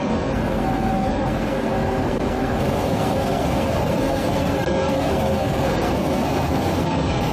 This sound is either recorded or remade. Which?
remade